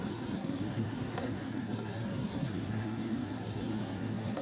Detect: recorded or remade remade